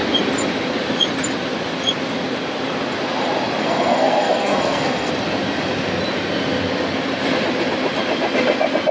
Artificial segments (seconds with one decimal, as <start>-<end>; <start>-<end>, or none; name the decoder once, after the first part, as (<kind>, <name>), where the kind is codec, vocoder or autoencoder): 3.6-5.1 (codec, SNAC)